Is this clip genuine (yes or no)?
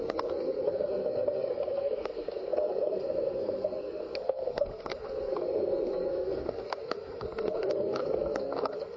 no